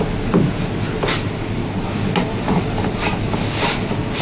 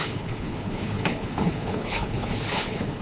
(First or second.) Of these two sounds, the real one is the first